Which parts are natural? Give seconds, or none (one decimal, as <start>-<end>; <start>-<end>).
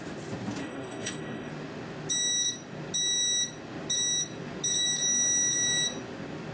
0.0-0.6; 1.5-6.5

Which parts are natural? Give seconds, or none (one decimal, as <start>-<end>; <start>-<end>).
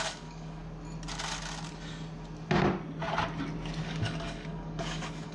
0.6-3.8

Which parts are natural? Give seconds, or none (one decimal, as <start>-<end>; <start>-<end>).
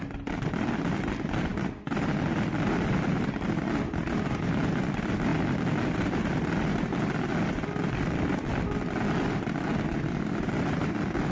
0.0-11.3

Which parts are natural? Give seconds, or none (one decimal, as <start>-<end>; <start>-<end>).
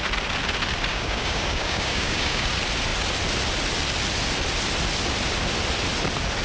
0.0-0.9; 2.5-6.4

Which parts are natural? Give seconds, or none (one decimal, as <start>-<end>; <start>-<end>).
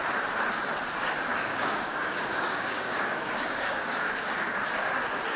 0.0-1.3; 4.5-5.4